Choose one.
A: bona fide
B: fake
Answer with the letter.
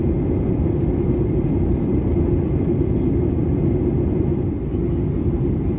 A